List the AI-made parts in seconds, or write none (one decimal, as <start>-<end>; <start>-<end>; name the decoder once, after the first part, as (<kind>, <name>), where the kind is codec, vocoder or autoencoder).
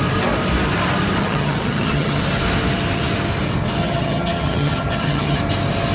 1.2-2.2 (vocoder, HiFi-GAN); 3.8-5.4